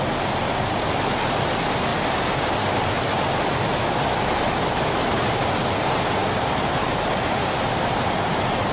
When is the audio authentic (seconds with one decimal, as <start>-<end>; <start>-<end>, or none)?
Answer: 0.0-8.7